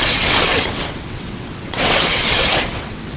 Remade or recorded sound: remade